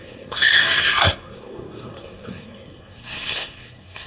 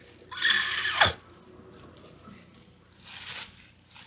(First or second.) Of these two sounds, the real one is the second